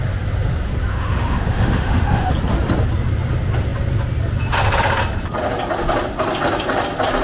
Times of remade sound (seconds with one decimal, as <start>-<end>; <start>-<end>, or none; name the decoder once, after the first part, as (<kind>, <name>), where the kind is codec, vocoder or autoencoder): 0.9-2.3 (autoencoder, DAC-VAE)